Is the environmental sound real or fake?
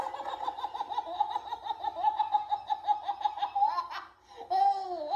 real